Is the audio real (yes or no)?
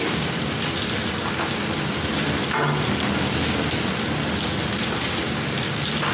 yes